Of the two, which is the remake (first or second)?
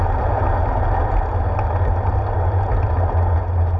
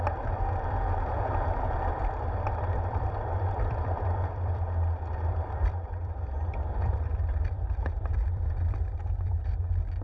second